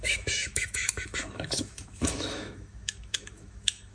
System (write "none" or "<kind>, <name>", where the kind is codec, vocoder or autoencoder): autoencoder, DAC-VAE